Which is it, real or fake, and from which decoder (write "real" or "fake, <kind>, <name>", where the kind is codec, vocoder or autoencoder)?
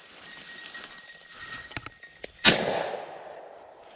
real